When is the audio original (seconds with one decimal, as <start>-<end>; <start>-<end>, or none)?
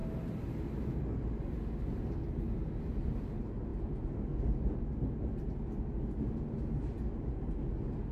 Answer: 0.0-8.1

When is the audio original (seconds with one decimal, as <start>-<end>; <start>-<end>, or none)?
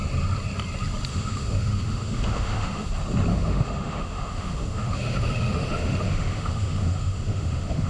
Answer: 0.0-1.1; 2.9-3.3